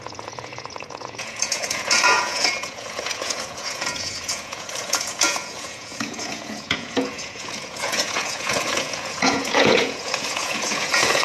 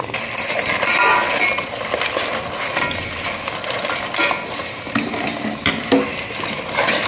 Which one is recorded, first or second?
second